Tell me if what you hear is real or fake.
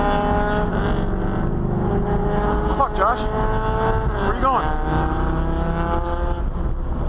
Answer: real